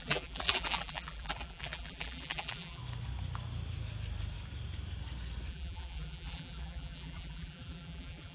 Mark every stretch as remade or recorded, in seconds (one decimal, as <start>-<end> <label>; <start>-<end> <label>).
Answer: 0.0-2.8 remade; 2.8-5.5 recorded; 5.5-8.3 remade